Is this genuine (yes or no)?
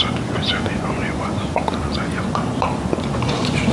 no